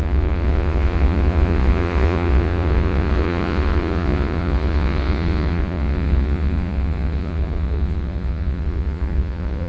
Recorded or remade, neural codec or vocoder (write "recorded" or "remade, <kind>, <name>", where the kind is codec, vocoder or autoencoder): remade, vocoder, Vocos